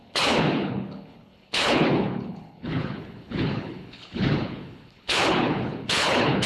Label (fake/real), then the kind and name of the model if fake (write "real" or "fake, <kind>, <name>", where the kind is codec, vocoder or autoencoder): fake, codec, HILCodec